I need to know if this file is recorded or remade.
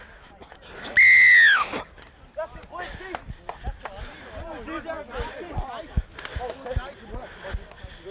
recorded